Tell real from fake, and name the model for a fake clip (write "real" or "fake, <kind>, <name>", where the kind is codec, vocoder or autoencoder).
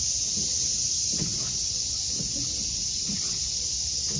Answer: real